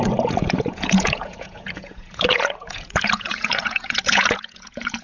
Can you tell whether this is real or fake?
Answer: fake